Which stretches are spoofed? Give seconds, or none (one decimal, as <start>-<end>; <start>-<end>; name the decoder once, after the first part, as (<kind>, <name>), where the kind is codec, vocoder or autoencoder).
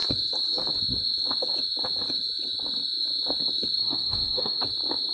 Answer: 3.8-4.6 (autoencoder, DAC-VAE)